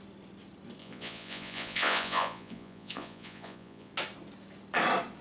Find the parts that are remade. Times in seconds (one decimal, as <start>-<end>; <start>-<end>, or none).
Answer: 0.8-3.9